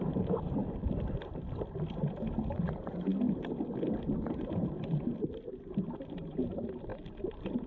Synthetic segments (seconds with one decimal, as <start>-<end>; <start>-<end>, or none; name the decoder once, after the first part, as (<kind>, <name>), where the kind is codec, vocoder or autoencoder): none